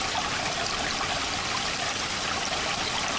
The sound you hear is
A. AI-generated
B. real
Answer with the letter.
B